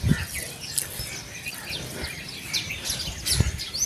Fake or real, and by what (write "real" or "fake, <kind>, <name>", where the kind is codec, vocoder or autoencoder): real